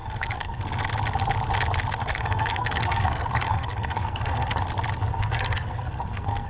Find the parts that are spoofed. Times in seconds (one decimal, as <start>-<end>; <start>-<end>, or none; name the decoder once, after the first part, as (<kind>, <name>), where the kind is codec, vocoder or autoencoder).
0.0-0.6 (codec, SNAC); 2.0-4.6; 5.1-6.5